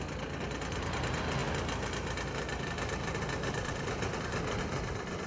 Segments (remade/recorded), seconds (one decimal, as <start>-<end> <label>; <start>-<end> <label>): 0.0-5.3 recorded